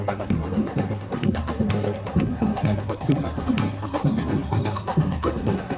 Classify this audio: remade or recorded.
remade